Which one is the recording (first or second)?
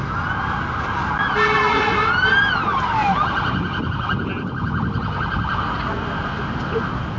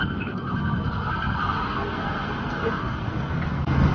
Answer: first